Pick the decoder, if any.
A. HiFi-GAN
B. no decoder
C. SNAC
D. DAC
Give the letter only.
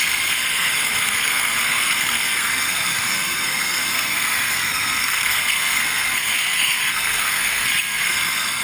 C